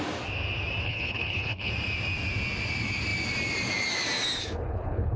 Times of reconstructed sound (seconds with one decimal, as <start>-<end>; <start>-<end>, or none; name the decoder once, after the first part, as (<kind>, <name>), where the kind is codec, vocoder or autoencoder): 0.8-1.7 (codec, HILCodec); 4.4-5.2